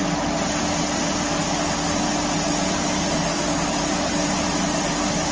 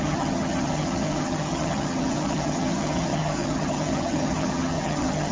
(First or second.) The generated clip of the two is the second